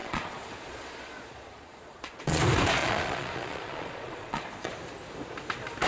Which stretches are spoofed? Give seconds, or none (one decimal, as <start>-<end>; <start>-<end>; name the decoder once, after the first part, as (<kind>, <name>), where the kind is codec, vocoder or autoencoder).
0.0-2.4 (vocoder, Vocos); 2.8-4.7